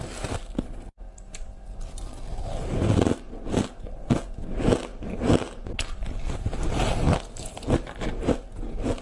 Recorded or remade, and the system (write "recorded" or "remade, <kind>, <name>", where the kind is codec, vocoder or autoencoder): recorded